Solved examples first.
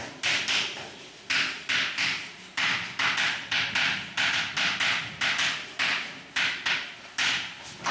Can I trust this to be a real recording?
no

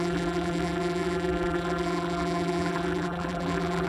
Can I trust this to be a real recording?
no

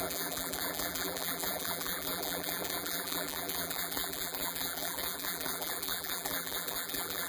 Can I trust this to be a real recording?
no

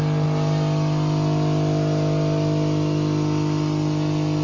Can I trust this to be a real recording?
yes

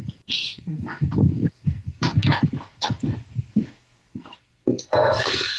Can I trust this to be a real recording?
no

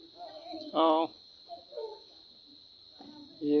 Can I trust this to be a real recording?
no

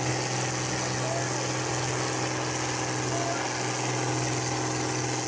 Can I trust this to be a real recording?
yes